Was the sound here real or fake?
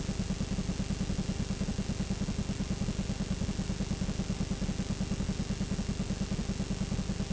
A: real